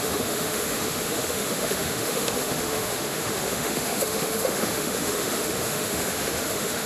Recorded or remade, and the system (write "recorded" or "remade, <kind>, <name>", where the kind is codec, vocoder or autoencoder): remade, autoencoder, DAC-VAE